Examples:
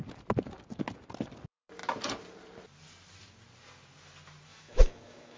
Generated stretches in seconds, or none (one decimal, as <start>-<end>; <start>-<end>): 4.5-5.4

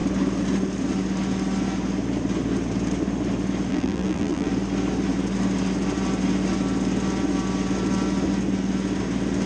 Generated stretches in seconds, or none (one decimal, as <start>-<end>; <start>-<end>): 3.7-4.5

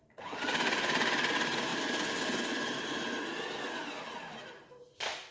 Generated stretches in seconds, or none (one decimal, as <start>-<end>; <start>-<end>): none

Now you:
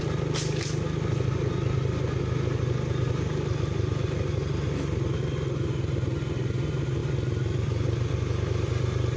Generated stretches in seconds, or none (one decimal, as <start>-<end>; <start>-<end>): none

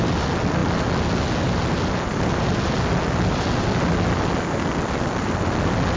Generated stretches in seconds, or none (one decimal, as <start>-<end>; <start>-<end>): none

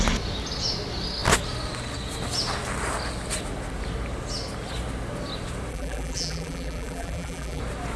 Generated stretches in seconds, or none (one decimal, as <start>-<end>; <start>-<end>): 5.7-7.6

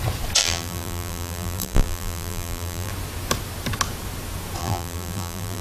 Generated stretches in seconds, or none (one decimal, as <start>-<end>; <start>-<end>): 0.4-2.9; 4.6-5.6

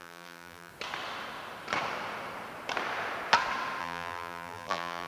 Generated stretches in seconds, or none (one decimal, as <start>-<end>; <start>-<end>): 0.0-0.7; 3.8-5.1